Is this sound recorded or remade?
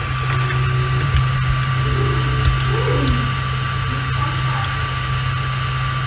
recorded